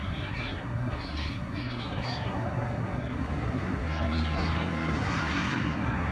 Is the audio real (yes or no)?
no